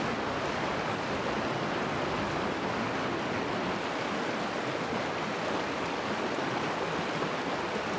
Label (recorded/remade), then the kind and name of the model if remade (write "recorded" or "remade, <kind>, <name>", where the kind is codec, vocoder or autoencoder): recorded